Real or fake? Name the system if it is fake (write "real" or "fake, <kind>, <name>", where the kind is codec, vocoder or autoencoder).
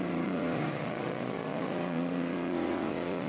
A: fake, vocoder, Vocos